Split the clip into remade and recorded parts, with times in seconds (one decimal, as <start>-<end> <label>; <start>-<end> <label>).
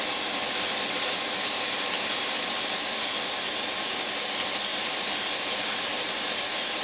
0.0-4.7 recorded; 4.7-6.8 remade